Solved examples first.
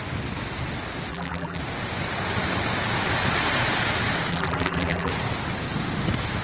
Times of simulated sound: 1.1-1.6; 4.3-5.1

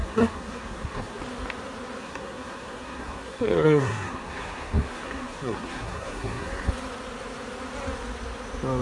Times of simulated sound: 0.0-1.2; 2.0-6.7

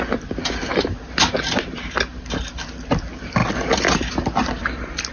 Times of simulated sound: none

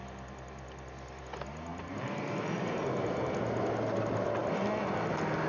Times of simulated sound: 1.7-2.8

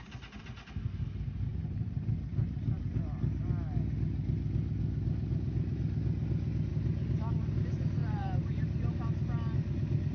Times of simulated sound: 1.5-3.0; 8.0-9.0

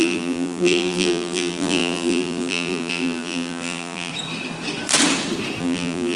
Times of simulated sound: 0.0-4.1; 5.6-6.2